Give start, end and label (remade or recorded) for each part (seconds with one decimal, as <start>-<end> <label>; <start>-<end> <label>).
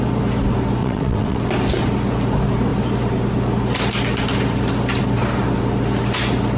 0.0-0.8 recorded; 0.8-1.4 remade; 1.4-6.6 recorded